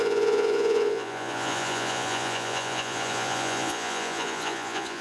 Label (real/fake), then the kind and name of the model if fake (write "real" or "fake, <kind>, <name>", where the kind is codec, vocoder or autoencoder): fake, vocoder, Vocos